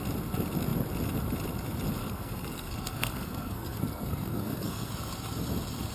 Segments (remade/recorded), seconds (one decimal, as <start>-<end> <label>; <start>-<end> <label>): 0.0-2.0 recorded; 2.0-4.9 remade; 4.9-5.9 recorded